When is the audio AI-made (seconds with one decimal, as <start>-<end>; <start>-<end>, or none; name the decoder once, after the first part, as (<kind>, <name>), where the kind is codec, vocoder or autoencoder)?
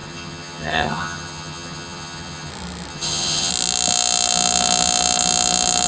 0.0-2.5 (vocoder, HiFi-GAN); 2.9-3.5